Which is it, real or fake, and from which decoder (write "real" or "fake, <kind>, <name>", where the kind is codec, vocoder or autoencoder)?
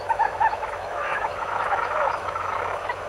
fake, autoencoder, DAC-VAE